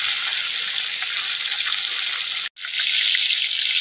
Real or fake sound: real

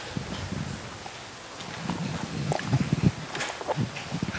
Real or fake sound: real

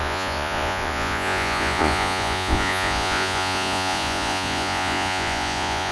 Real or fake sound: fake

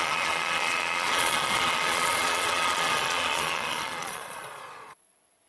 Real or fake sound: fake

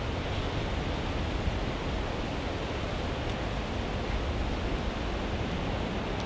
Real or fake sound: real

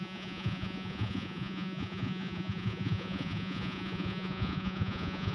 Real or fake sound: fake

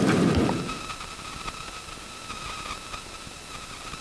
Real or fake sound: real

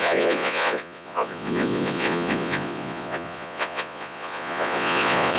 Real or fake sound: fake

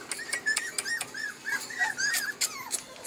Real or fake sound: real